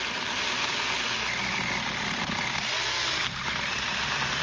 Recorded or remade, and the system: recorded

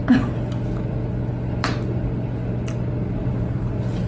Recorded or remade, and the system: recorded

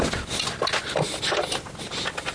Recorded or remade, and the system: recorded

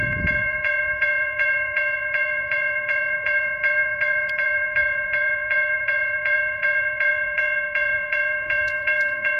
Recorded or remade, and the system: remade, vocoder, Vocos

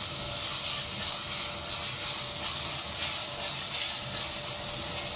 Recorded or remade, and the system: recorded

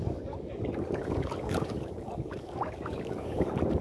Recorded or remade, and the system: remade, codec, DAC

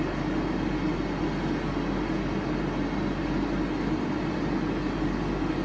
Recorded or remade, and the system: recorded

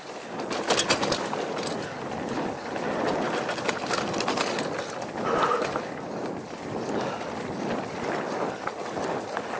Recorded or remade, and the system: recorded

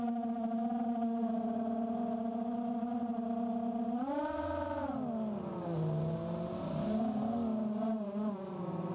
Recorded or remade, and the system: recorded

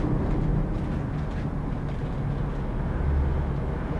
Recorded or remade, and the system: recorded